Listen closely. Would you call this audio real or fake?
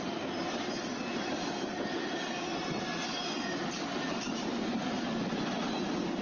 real